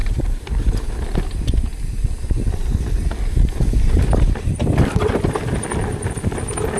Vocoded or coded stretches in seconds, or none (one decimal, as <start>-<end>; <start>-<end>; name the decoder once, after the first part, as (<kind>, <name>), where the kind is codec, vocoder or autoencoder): 0.0-0.9 (vocoder, BigVGAN v2)